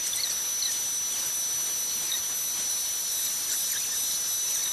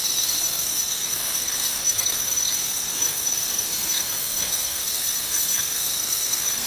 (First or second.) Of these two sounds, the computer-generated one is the second